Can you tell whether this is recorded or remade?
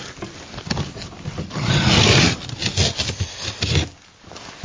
recorded